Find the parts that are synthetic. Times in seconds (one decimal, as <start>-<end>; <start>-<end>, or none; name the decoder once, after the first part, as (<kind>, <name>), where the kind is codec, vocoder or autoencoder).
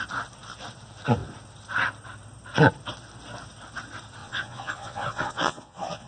4.2-6.1 (vocoder, Vocos)